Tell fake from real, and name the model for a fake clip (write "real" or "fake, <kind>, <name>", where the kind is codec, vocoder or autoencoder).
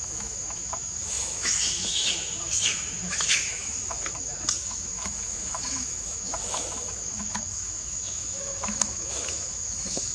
fake, autoencoder, DAC-VAE